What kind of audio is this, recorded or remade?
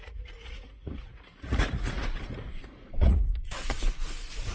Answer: remade